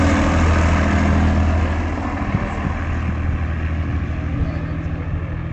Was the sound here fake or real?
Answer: real